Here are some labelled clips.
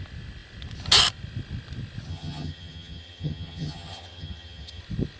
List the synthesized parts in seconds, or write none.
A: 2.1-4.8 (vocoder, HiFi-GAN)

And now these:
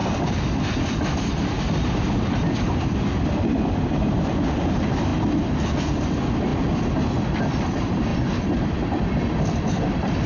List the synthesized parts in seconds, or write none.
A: 0.9-5.1 (vocoder, BigVGAN v2); 5.8-10.3

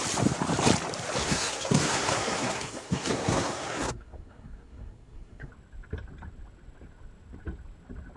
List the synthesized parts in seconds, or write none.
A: 1.2-5.5 (codec, SNAC)

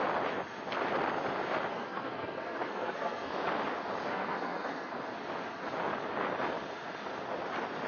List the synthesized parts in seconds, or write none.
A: 1.7-3.3 (codec, SNAC); 4.1-4.9

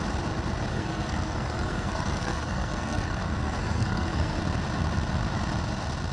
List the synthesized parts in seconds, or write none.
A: 0.7-4.4 (codec, SNAC)

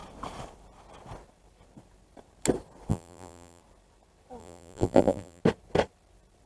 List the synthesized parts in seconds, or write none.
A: 2.9-3.6 (vocoder, BigVGAN v2); 4.4-5.4